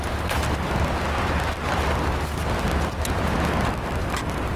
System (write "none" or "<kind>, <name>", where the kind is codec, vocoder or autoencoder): none